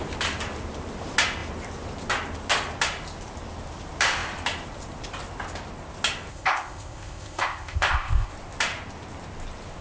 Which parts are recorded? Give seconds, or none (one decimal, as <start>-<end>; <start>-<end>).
0.0-6.3; 8.3-9.8